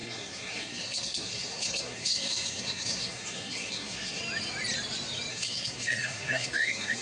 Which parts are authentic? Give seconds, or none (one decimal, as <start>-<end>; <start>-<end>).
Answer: 4.2-5.3